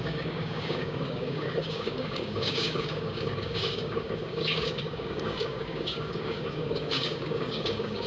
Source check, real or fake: fake